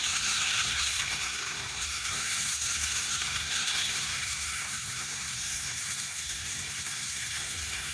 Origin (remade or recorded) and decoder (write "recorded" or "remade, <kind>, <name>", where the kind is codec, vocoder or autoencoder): remade, codec, SNAC